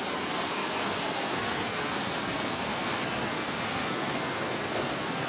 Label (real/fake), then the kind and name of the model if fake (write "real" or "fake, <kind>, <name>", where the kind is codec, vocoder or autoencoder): fake, codec, SNAC